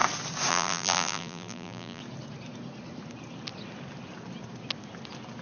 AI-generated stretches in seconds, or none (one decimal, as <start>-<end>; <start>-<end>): 0.5-2.0